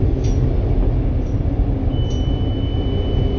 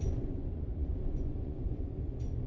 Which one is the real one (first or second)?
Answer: first